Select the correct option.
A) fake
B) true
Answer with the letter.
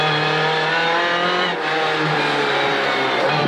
B